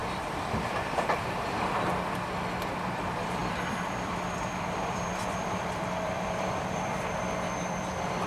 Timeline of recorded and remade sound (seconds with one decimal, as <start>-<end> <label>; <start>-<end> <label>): 0.0-1.9 remade; 1.9-2.9 recorded; 2.9-8.3 remade